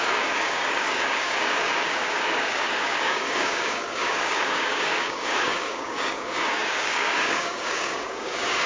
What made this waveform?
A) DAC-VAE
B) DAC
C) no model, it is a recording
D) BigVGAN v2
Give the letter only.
B